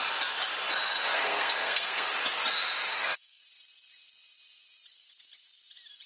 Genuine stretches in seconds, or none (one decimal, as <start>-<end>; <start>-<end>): 0.0-1.1; 2.1-2.9; 3.4-6.1